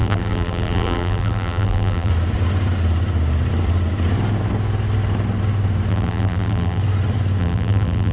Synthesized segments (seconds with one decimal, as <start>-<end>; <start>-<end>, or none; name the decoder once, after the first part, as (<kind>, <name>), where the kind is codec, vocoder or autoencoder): 0.0-2.1 (vocoder, BigVGAN v2); 5.9-6.8; 7.4-8.1